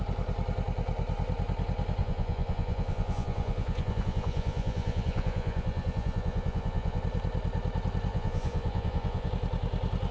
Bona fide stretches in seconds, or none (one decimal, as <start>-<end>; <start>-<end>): 0.0-2.0; 7.0-8.1; 9.3-10.1